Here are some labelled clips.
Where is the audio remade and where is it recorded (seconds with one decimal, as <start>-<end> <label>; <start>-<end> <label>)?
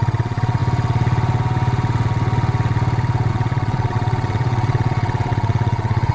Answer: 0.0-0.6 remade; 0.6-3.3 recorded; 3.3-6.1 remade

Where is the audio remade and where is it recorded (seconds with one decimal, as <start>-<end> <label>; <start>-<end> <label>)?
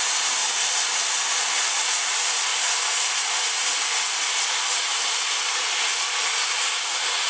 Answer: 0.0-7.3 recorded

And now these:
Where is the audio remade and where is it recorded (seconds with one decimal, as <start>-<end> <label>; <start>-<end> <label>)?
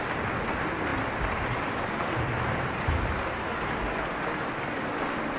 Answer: 0.0-5.4 recorded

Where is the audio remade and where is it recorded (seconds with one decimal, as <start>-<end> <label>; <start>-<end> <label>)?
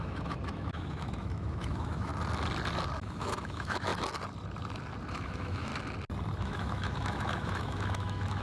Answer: 0.0-2.1 remade; 2.1-3.0 recorded; 3.0-3.9 remade; 3.9-5.1 recorded; 5.1-5.7 remade; 5.7-6.4 recorded; 6.4-8.4 remade